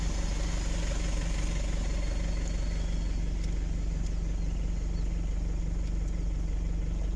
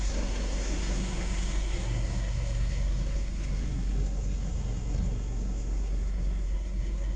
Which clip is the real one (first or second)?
first